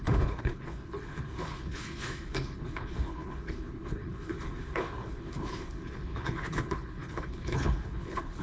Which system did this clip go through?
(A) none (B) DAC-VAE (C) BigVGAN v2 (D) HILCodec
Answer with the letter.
D